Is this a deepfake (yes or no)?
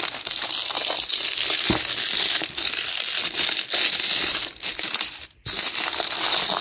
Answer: no